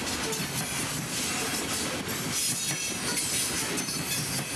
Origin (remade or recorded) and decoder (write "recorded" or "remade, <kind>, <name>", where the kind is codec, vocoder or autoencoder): recorded